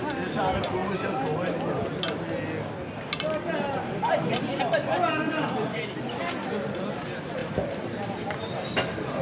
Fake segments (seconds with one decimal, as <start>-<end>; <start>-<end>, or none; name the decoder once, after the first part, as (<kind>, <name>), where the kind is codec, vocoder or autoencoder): 7.4-9.2 (vocoder, BigVGAN v2)